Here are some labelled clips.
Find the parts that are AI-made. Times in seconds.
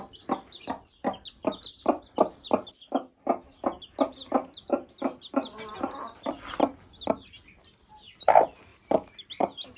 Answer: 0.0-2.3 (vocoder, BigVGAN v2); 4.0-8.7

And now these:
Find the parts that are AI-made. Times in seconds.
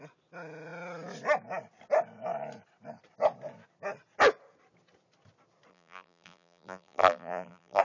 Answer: 5.7-7.8 (vocoder, BigVGAN v2)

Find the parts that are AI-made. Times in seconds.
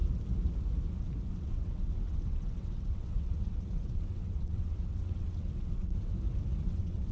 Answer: 1.3-6.1 (vocoder, WaveNeXt); 6.6-7.1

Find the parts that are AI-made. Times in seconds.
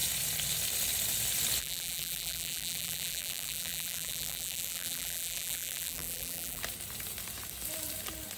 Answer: 1.6-6.6 (vocoder, BigVGAN v2)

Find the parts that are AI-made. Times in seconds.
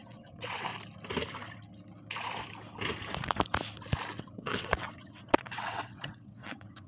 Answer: 0.0-0.7 (vocoder, WaveNeXt); 4.2-6.9